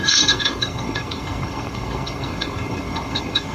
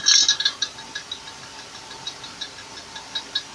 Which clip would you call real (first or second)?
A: second